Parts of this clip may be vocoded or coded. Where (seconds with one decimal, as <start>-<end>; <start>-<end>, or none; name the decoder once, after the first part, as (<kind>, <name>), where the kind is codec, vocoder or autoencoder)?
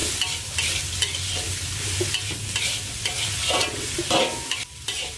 none